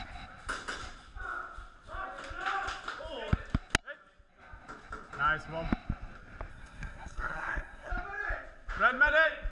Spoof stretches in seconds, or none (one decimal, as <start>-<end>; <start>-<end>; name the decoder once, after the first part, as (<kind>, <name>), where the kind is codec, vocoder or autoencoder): 6.5-7.9 (codec, SNAC)

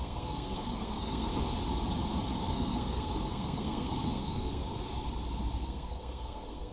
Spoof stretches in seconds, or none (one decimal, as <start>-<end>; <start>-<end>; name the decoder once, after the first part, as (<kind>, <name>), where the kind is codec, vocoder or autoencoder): 0.0-1.3 (codec, SNAC); 2.5-4.6; 5.6-6.7

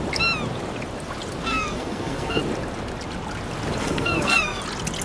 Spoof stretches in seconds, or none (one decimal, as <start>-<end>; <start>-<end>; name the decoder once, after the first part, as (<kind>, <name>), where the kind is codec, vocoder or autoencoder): 1.5-2.4 (codec, SNAC); 3.8-4.6

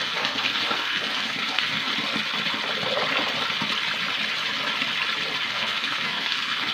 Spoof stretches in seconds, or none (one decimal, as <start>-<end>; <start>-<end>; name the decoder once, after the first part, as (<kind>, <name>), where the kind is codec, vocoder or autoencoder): 0.0-1.9 (codec, SNAC); 5.5-6.7